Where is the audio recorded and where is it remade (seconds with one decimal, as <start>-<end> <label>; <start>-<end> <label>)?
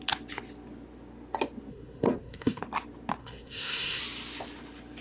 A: 0.0-1.7 recorded; 1.7-2.6 remade; 2.6-3.2 recorded; 3.2-4.0 remade; 4.0-5.0 recorded